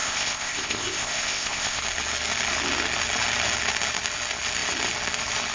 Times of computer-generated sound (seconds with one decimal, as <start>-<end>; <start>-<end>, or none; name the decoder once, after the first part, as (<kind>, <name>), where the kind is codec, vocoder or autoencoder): 0.0-1.8 (codec, ZipCodec)